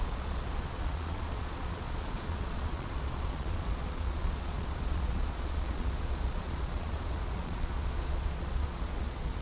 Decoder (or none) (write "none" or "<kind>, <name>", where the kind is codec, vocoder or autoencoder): vocoder, Vocos